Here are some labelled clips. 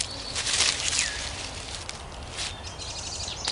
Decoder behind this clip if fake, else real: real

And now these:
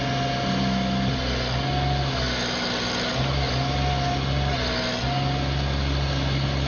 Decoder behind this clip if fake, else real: real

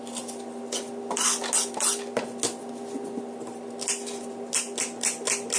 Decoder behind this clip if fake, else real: real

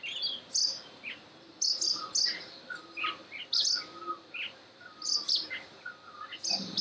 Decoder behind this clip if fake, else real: real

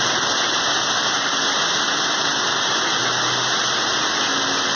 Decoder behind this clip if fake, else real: real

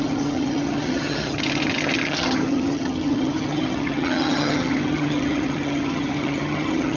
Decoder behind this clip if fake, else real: fake, vocoder, HiFi-GAN